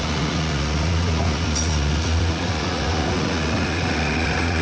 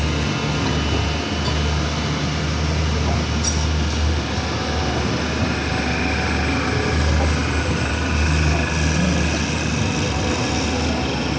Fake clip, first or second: first